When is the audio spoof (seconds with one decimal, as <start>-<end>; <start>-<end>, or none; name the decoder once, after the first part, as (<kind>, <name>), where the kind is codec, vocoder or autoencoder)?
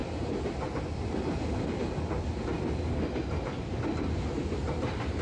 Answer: none